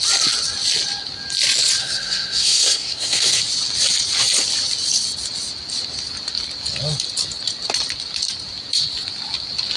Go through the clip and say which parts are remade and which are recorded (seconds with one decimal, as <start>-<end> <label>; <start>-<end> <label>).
0.0-1.8 recorded; 1.8-3.4 remade; 3.4-9.8 recorded